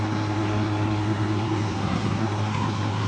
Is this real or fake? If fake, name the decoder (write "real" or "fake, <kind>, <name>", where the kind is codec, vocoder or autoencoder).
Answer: fake, codec, SNAC